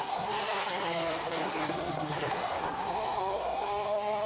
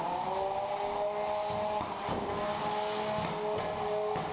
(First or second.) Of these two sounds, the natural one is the second